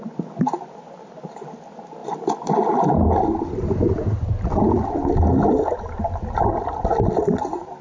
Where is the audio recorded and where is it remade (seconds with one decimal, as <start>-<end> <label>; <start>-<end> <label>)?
0.0-7.8 recorded